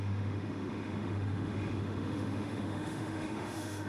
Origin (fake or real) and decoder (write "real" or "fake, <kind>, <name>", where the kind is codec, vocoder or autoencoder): fake, autoencoder, DAC-VAE